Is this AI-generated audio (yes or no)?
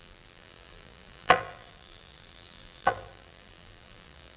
yes